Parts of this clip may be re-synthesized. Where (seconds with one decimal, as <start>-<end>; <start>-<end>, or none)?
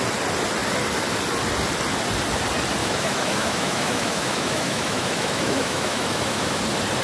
2.8-6.6